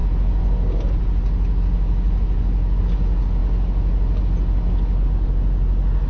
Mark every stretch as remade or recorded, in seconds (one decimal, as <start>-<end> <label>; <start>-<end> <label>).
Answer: 0.0-6.1 recorded